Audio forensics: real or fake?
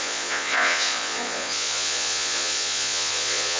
fake